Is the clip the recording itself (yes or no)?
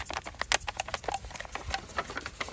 yes